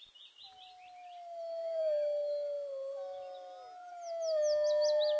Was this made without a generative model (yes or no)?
yes